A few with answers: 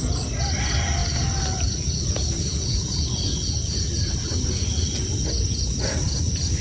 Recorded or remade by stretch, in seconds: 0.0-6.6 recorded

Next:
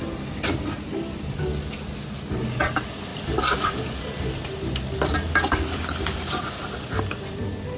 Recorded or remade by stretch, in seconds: 0.0-7.8 recorded

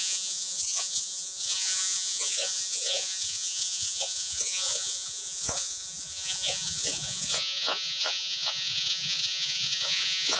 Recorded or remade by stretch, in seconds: 0.0-10.4 remade

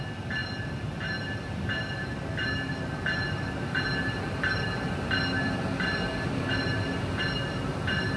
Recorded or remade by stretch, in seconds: 0.0-8.2 recorded

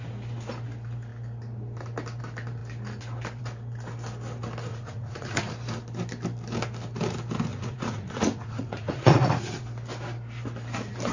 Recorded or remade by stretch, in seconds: 0.0-4.7 recorded; 4.7-5.5 remade; 5.5-7.5 recorded; 7.5-9.6 remade; 9.6-11.1 recorded

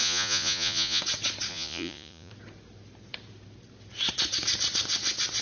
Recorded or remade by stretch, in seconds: 0.0-1.0 remade; 1.0-1.5 recorded; 1.5-2.3 remade; 2.3-5.4 recorded

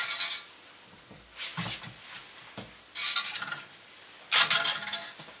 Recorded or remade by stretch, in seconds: 0.0-5.4 recorded

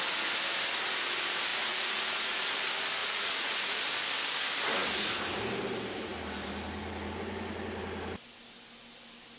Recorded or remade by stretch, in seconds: 0.0-1.5 recorded; 1.5-2.4 remade; 2.4-3.0 recorded; 3.0-3.8 remade; 3.8-9.4 recorded